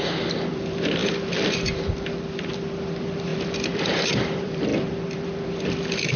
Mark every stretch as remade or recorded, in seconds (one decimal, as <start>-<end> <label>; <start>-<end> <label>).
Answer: 0.0-6.2 remade